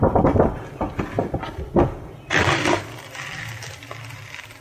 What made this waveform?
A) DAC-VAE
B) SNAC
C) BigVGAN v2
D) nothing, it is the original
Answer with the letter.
D